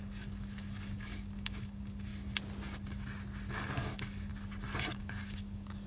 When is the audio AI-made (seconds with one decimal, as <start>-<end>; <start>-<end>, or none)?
0.0-2.1; 3.5-4.3; 4.9-5.9